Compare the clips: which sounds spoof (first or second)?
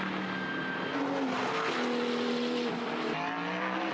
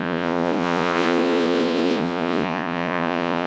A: second